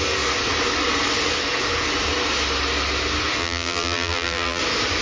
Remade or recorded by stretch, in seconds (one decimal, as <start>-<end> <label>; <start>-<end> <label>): 0.0-3.4 recorded; 3.4-4.6 remade; 4.6-5.0 recorded